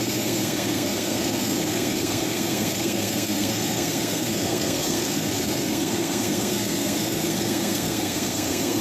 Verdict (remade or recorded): remade